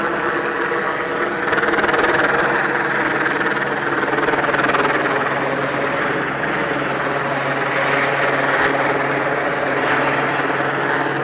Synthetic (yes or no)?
no